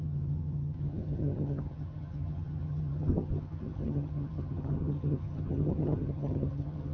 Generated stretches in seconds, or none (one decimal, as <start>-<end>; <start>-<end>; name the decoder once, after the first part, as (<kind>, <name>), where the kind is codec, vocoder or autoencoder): 0.0-6.9 (vocoder, HiFi-GAN)